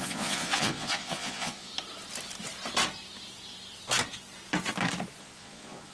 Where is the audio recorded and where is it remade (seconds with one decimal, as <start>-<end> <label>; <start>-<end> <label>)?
0.0-1.7 remade; 1.7-5.2 recorded; 5.2-5.9 remade